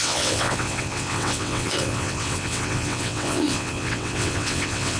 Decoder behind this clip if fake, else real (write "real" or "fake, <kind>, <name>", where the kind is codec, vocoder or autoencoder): fake, vocoder, WaveNeXt